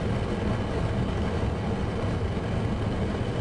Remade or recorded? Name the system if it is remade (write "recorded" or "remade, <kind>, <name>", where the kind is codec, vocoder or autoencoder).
recorded